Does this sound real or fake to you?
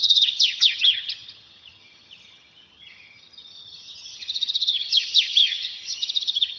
fake